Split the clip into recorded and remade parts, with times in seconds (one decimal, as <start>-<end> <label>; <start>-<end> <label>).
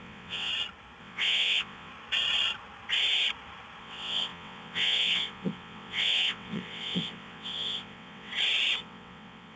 0.0-0.5 remade; 0.5-1.0 recorded; 1.0-1.9 remade; 1.9-3.8 recorded; 3.8-8.3 remade; 8.3-8.8 recorded; 8.8-9.6 remade